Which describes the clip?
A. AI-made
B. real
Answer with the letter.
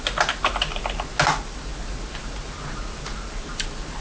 B